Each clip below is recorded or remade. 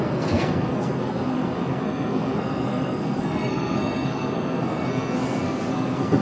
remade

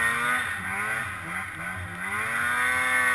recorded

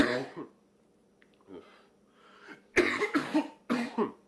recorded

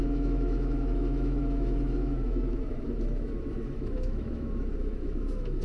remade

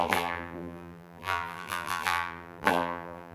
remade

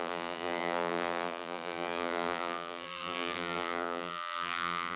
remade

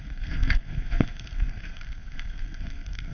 remade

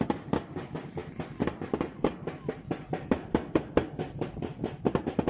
recorded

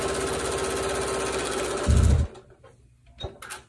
recorded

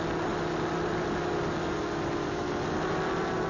recorded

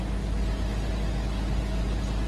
recorded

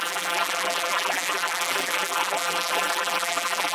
remade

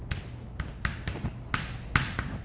recorded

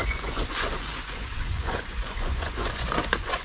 remade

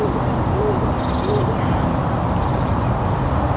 recorded